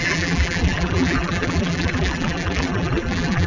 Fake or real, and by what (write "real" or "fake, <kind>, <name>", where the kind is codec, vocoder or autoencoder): fake, vocoder, BigVGAN v2